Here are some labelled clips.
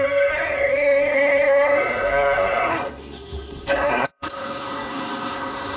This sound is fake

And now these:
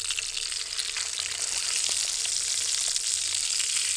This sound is real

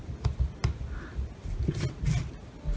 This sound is real